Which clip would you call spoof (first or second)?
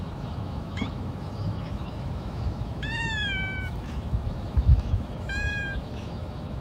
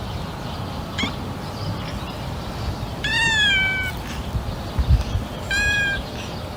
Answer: first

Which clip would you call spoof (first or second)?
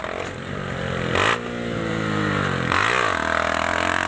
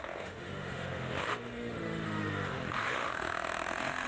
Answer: second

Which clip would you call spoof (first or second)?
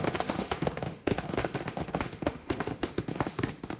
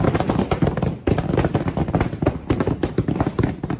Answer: first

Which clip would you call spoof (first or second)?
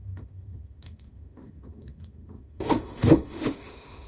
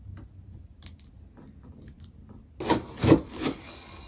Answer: first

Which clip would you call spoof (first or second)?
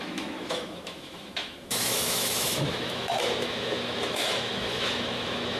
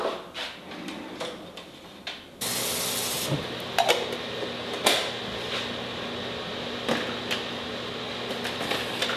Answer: first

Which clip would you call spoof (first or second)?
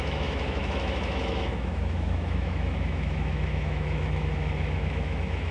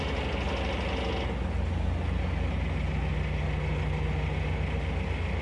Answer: first